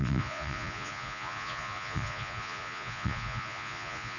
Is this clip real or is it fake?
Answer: fake